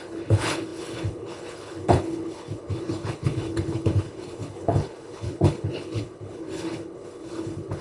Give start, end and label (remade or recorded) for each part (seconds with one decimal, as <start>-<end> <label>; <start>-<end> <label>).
0.0-7.8 remade